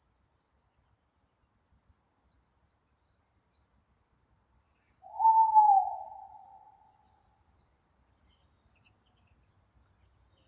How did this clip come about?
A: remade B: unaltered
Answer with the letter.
B